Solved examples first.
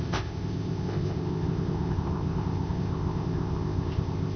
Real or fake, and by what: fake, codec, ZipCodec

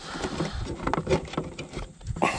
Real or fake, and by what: real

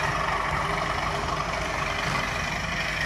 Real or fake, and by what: real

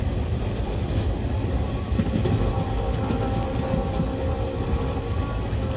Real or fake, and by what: real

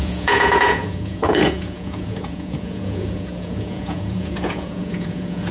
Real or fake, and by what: fake, vocoder, Vocos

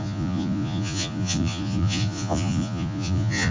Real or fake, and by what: fake, vocoder, Vocos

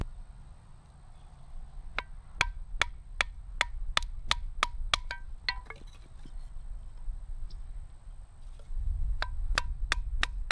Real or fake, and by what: real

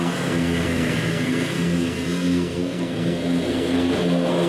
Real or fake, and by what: fake, codec, SNAC